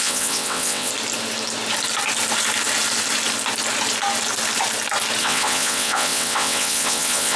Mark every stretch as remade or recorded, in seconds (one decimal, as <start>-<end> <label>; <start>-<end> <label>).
0.0-0.9 remade; 0.9-5.2 recorded; 5.2-7.4 remade

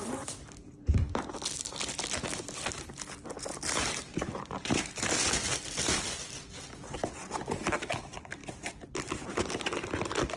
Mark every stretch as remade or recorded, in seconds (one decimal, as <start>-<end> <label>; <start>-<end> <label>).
0.0-4.1 recorded; 4.1-4.9 remade; 4.9-10.4 recorded

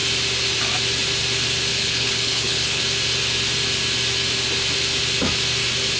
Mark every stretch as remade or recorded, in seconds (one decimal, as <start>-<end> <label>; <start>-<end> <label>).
0.0-1.7 recorded; 1.7-2.8 remade; 2.8-6.0 recorded

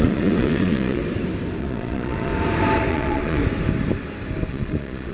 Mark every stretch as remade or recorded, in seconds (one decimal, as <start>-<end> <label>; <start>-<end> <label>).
0.0-1.0 remade; 1.0-1.6 recorded; 1.6-2.3 remade; 2.3-2.9 recorded; 2.9-3.4 remade; 3.4-4.5 recorded; 4.5-5.1 remade

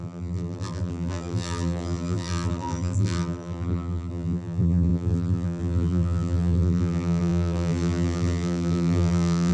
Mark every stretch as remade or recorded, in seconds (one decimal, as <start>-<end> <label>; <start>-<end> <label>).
0.0-9.5 remade

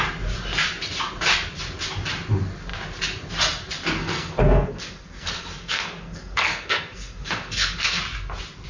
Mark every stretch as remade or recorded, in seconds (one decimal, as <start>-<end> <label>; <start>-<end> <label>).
0.0-4.0 recorded; 4.0-8.0 remade; 8.0-8.7 recorded

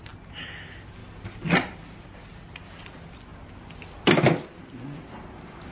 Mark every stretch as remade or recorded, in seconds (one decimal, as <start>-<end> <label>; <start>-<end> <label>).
0.0-5.7 recorded

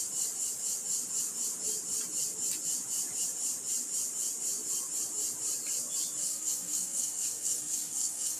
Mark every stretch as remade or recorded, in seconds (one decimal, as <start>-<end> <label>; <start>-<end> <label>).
0.0-6.2 recorded; 6.2-8.4 remade